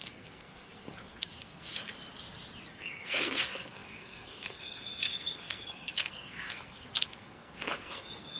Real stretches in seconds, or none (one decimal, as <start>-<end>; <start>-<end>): 1.9-2.7